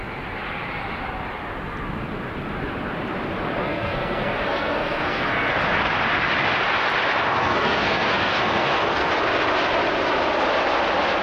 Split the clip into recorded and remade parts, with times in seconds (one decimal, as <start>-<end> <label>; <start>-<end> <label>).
0.0-3.6 recorded; 3.6-5.5 remade; 5.5-7.4 recorded; 7.4-9.1 remade; 9.1-11.2 recorded